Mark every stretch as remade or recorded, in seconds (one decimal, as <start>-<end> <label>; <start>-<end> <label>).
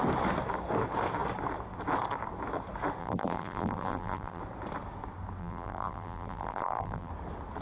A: 0.0-3.0 recorded; 3.0-4.4 remade; 4.4-5.4 recorded; 5.4-7.1 remade; 7.1-7.6 recorded